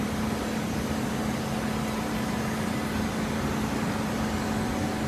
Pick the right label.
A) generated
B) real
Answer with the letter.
B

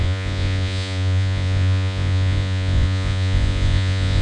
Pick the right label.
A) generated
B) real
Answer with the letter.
A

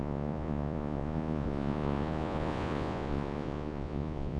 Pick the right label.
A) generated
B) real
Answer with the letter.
A